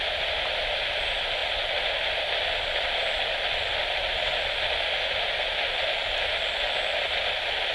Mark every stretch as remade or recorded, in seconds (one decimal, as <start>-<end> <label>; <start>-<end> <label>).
0.0-7.7 recorded